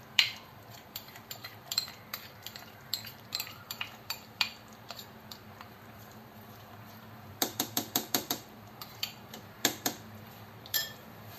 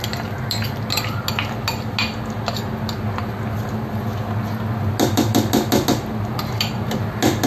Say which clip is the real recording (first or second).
second